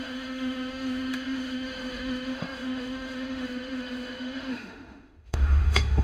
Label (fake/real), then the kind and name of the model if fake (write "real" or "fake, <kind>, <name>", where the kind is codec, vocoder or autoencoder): fake, autoencoder, DAC-VAE